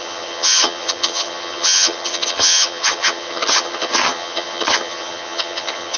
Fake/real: fake